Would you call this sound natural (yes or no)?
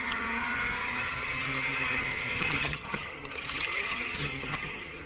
no